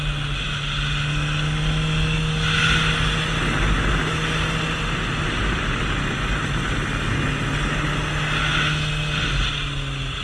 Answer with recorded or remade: recorded